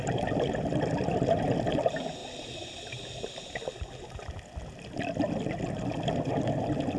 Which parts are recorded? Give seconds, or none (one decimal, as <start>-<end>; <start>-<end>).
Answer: 0.0-7.0